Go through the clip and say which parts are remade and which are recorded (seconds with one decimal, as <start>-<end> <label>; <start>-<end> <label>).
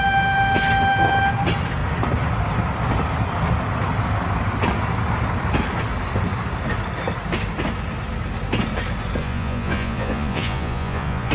0.0-9.2 recorded; 9.2-11.3 remade